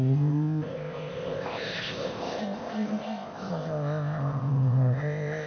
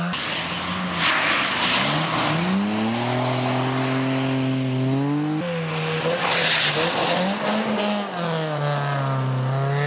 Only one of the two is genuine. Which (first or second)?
second